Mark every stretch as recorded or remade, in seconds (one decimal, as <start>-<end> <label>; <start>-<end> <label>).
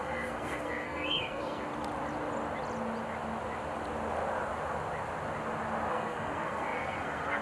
0.0-1.7 remade; 1.7-5.9 recorded; 5.9-7.4 remade